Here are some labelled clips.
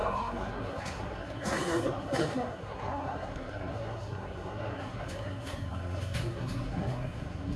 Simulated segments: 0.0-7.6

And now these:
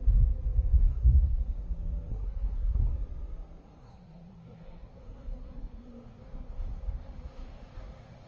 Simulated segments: 0.8-1.4; 2.1-2.9; 3.8-8.3